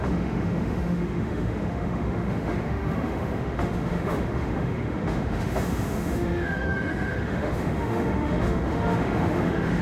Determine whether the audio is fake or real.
fake